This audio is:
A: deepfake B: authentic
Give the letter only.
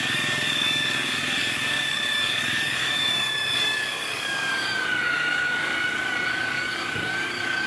A